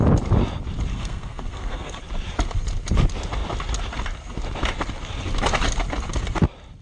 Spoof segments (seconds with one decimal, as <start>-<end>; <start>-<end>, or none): 0.9-2.0